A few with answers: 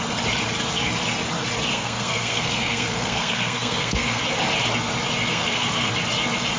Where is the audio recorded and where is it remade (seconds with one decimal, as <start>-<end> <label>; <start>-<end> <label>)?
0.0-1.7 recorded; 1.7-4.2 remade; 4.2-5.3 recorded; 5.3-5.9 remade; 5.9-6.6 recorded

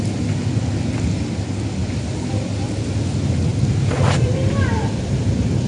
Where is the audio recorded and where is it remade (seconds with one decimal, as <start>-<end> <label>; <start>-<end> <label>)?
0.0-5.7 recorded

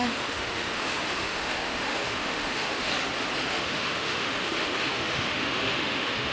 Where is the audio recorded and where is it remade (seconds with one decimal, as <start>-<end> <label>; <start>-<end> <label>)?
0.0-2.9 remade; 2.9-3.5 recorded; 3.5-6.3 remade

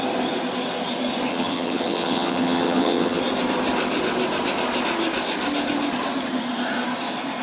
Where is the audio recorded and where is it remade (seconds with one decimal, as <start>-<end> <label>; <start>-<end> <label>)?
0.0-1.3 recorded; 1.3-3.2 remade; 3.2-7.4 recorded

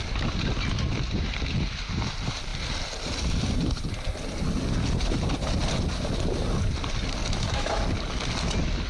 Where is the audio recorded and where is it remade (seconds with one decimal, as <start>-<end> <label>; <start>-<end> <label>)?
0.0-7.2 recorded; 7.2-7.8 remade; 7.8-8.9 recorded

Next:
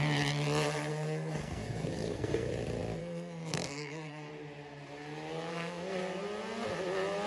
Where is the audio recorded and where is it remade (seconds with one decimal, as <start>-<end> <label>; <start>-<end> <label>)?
0.0-0.9 recorded; 0.9-2.5 remade; 2.5-3.0 recorded; 3.0-4.3 remade; 4.3-5.5 recorded; 5.5-6.0 remade; 6.0-7.3 recorded

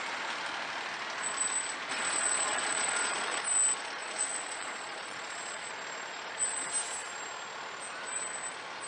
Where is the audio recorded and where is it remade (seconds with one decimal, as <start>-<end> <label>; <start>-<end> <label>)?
0.0-1.9 recorded; 1.9-3.4 remade; 3.4-4.0 recorded; 4.0-5.7 remade; 5.7-8.9 recorded

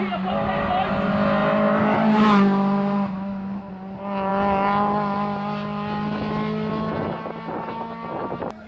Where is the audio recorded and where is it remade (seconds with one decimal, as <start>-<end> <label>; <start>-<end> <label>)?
0.0-8.7 recorded